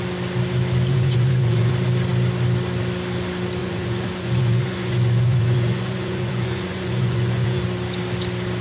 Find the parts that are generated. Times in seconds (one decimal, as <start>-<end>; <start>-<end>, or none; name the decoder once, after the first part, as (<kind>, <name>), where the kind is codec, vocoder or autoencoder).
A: 0.9-1.7 (vocoder, Vocos); 3.6-7.6